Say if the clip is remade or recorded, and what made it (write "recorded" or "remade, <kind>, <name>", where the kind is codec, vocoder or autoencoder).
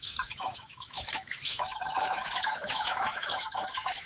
remade, autoencoder, DAC-VAE